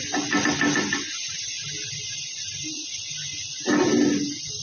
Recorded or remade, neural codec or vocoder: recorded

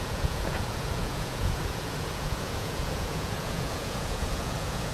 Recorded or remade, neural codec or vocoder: remade, vocoder, Vocos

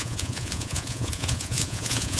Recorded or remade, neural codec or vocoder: remade, vocoder, Vocos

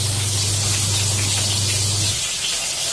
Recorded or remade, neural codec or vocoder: recorded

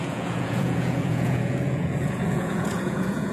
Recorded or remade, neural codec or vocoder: remade, vocoder, Vocos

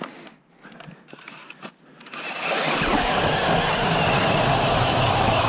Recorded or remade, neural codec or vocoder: recorded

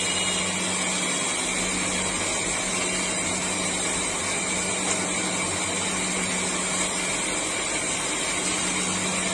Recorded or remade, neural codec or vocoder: recorded